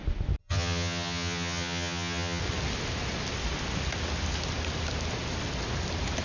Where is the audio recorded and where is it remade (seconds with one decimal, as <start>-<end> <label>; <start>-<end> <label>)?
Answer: 0.0-0.4 recorded; 0.4-2.4 remade; 2.4-6.2 recorded